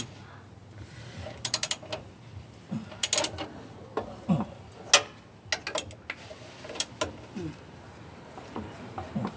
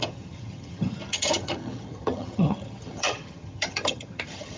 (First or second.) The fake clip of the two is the second